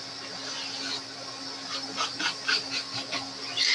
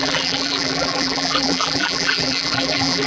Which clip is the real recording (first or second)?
first